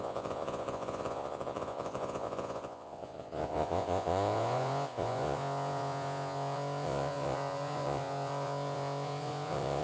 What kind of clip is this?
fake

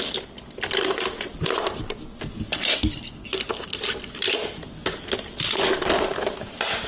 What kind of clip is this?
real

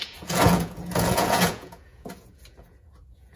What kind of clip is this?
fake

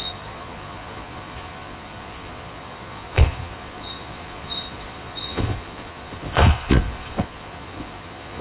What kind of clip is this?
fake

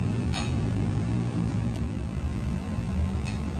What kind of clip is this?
fake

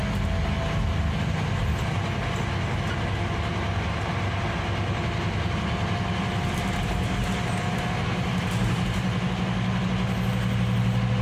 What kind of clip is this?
real